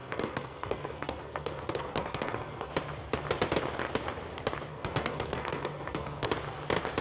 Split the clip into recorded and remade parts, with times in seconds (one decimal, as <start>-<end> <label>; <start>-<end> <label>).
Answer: 0.0-2.7 remade; 2.7-4.7 recorded; 4.7-6.3 remade; 6.3-7.0 recorded